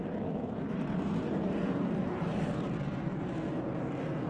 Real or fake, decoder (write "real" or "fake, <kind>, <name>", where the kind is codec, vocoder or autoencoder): fake, vocoder, BigVGAN v2